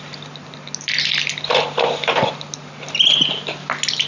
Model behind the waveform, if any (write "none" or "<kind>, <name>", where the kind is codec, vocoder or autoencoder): none